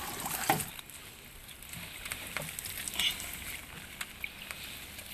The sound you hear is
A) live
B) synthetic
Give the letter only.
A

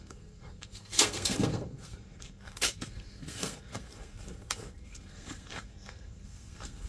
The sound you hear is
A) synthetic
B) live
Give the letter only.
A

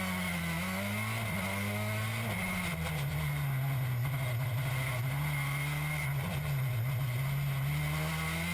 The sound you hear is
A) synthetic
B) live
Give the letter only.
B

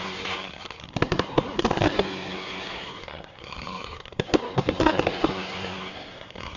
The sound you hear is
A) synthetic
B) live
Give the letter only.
A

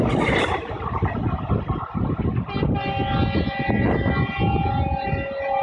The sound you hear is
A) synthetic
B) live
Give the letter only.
B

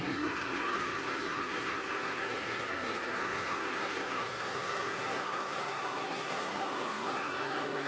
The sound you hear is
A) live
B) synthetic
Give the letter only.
B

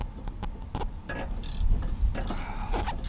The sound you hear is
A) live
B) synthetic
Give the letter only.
A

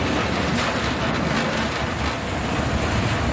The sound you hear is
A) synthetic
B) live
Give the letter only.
B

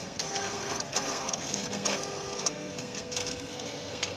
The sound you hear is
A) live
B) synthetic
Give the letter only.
B